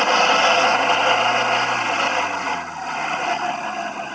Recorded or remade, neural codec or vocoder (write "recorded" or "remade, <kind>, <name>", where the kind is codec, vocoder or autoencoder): recorded